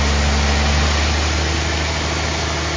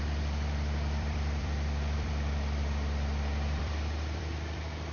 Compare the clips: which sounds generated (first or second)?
second